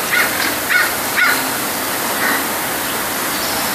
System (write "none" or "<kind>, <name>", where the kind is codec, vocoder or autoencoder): none